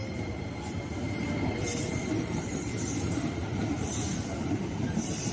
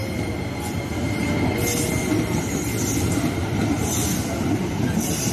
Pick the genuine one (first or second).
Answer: second